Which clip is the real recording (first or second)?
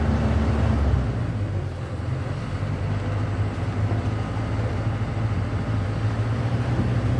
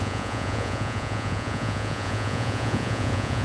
first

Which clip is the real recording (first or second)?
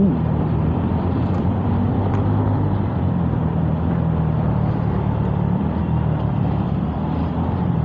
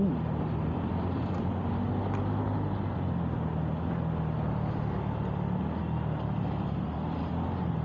second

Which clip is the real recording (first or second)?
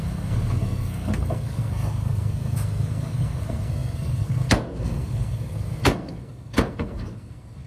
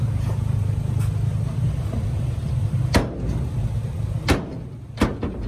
second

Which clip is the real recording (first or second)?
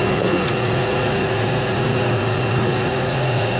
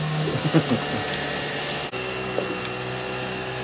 second